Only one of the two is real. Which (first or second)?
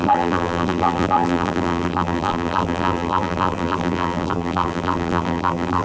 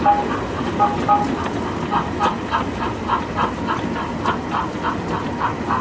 second